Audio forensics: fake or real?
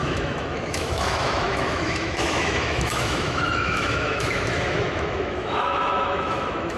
fake